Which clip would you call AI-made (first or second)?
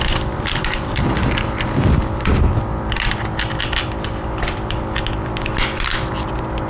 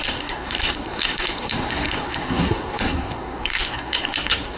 second